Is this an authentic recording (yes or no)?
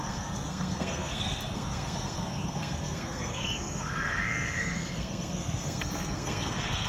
no